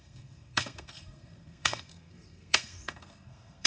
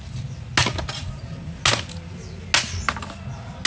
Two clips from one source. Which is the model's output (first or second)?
first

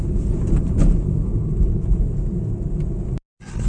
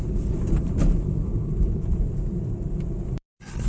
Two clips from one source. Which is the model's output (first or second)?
second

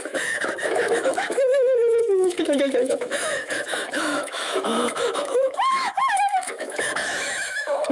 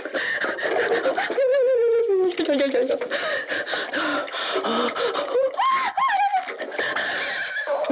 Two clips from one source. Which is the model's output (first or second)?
first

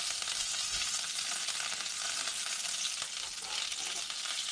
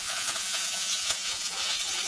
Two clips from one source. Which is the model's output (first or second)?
second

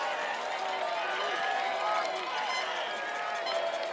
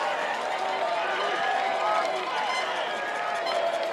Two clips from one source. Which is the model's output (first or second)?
second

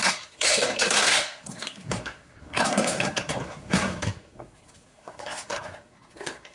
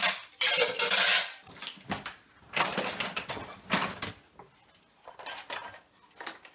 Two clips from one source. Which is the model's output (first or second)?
first